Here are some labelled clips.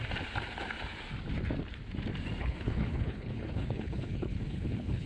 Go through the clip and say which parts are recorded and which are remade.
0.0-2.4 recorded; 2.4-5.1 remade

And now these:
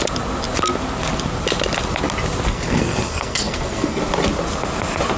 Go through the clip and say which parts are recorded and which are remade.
0.0-2.5 recorded; 2.5-4.0 remade; 4.0-5.2 recorded

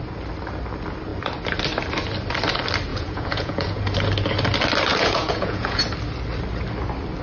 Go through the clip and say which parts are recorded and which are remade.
0.0-2.9 recorded; 2.9-3.8 remade; 3.8-4.9 recorded; 4.9-5.8 remade; 5.8-7.2 recorded

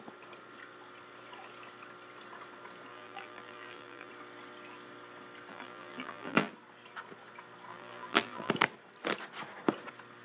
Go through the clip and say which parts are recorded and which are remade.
0.0-2.9 recorded; 2.9-4.1 remade; 4.1-5.5 recorded; 5.5-6.5 remade; 6.5-7.7 recorded; 7.7-8.5 remade; 8.5-10.2 recorded